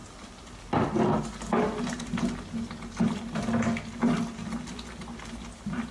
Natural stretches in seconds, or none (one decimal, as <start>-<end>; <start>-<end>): 0.0-5.9